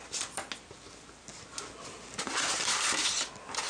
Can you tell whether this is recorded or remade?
recorded